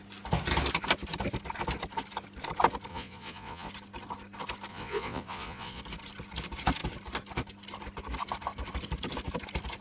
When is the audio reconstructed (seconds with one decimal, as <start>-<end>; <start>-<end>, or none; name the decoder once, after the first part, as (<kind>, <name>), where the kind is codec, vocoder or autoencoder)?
2.9-3.7 (vocoder, Vocos); 4.7-5.8